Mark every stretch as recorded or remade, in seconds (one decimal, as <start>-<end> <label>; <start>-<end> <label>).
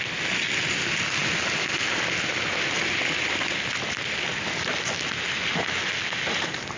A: 0.0-6.8 recorded